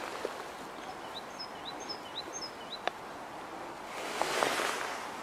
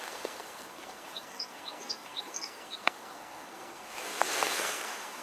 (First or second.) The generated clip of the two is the second